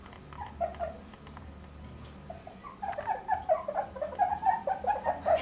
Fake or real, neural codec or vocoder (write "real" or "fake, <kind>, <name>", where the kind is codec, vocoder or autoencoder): real